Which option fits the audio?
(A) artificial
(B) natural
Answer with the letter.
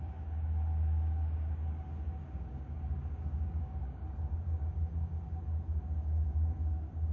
A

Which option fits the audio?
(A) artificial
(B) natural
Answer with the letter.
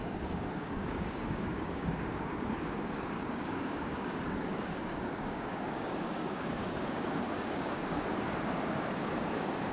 A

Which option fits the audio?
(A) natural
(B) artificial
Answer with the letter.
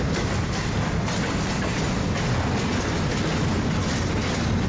A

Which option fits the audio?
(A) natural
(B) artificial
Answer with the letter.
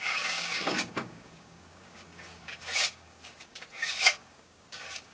B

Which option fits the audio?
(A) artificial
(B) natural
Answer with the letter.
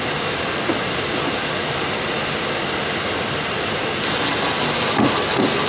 B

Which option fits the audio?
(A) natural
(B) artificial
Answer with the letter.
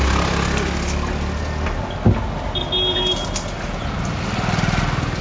A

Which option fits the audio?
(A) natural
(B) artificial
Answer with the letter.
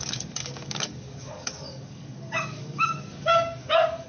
B